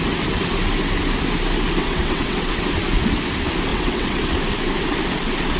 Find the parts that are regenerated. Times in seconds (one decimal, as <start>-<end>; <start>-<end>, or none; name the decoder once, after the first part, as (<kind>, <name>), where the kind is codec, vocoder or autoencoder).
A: 1.8-2.6 (vocoder, WaveNeXt); 3.7-4.2